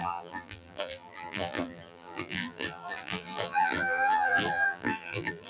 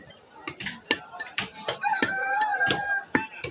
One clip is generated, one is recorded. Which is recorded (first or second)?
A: second